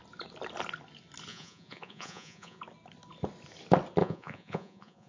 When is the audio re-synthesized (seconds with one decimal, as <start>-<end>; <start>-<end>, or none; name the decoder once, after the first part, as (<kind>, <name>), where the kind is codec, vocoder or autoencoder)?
1.3-2.6 (vocoder, Vocos); 4.0-5.1